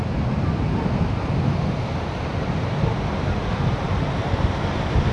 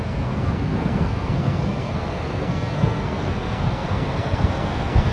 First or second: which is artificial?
second